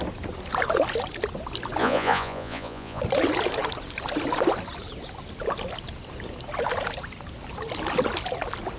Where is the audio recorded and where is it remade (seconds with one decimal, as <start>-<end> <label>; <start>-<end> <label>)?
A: 0.0-1.8 recorded; 1.8-3.0 remade; 3.0-8.8 recorded